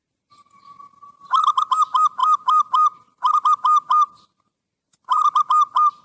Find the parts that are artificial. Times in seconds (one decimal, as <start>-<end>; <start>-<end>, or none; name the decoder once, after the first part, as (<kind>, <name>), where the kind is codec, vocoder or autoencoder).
none